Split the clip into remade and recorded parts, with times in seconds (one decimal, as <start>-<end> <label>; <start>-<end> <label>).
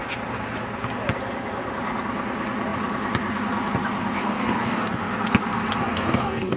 0.0-4.2 recorded; 4.2-4.9 remade; 4.9-5.8 recorded; 5.8-6.6 remade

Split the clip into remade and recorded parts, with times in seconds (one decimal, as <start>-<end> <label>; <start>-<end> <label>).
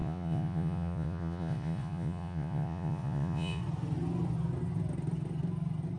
0.0-3.6 remade; 3.6-6.0 recorded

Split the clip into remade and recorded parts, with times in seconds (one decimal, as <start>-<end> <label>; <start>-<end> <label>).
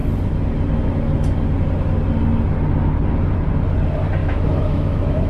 0.0-4.2 recorded; 4.2-5.3 remade